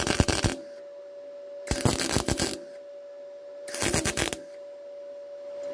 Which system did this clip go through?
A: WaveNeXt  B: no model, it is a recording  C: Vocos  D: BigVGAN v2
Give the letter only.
B